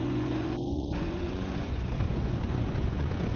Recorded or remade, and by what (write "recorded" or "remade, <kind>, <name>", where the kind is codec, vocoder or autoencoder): remade, vocoder, Vocos